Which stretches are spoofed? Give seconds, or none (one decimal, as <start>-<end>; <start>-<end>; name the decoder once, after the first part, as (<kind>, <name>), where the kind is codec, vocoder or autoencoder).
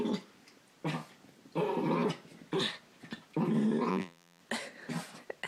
3.9-4.4 (vocoder, BigVGAN v2)